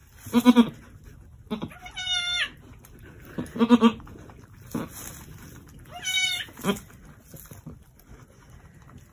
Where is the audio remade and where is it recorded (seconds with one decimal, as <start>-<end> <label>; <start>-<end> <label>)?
0.0-9.1 recorded